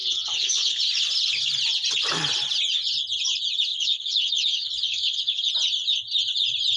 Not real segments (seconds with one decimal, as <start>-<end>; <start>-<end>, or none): 0.0-0.8; 3.7-5.5